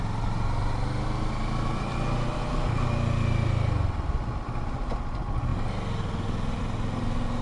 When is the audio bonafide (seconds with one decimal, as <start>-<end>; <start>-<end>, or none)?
0.0-7.4

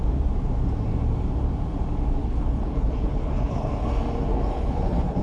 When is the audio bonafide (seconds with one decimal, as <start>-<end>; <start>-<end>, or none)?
0.0-2.2; 3.9-4.3

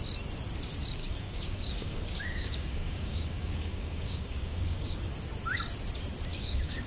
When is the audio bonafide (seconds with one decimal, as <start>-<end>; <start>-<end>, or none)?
0.0-1.0; 5.1-6.3

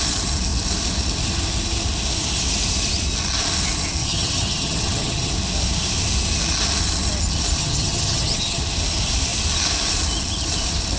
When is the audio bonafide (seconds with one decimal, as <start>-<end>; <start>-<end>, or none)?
0.0-4.0; 5.3-7.6; 8.6-11.0

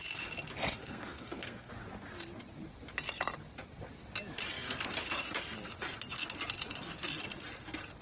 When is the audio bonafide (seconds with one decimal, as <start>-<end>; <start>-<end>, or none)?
0.0-0.8; 1.7-8.0

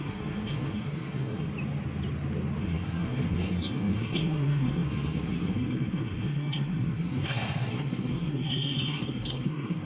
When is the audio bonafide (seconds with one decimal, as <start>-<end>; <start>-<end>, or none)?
1.5-2.6

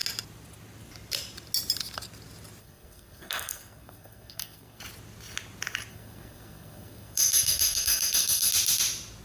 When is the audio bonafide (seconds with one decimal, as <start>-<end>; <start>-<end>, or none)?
0.0-2.6; 4.8-5.9; 8.5-9.2

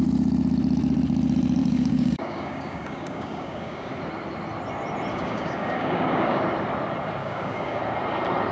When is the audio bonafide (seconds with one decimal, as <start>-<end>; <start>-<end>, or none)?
0.0-1.6; 3.9-5.1; 6.4-7.2; 7.8-8.5